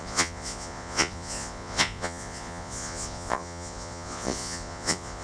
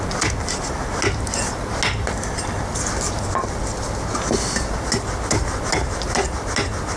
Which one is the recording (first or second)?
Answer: second